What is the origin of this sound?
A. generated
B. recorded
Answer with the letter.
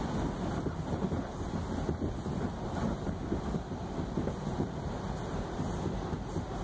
B